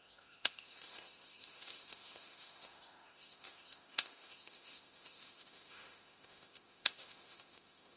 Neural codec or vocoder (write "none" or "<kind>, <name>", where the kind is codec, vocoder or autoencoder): autoencoder, DAC-VAE